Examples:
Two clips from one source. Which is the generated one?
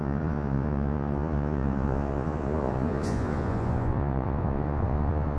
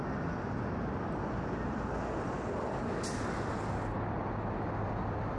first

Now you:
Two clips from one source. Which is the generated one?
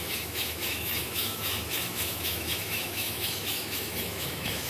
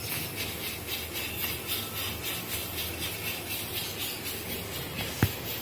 first